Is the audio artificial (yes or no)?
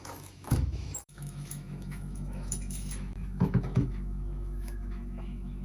yes